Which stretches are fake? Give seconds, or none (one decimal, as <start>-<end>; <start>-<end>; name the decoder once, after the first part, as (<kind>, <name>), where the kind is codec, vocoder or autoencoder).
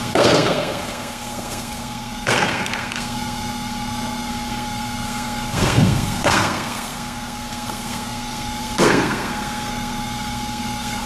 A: 0.0-11.1 (codec, SNAC)